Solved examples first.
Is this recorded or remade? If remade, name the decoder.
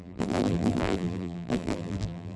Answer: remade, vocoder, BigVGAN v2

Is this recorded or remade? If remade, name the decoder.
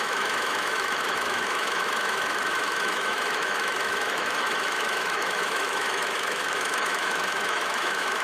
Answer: remade, autoencoder, DAC-VAE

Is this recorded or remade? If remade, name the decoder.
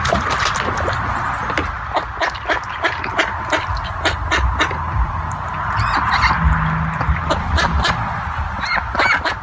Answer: recorded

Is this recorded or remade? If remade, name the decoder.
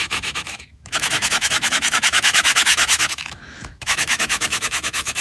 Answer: remade, autoencoder, DAC-VAE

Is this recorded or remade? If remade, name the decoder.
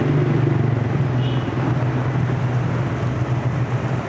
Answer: recorded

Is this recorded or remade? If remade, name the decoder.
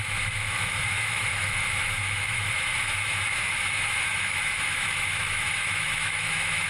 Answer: remade, autoencoder, DAC-VAE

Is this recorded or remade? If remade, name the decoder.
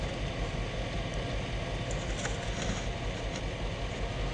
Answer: recorded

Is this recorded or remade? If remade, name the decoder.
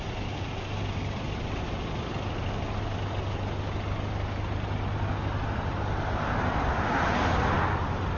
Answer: recorded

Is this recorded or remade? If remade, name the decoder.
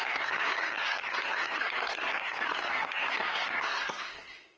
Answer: remade, codec, SNAC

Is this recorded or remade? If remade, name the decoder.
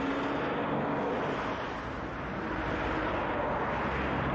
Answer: recorded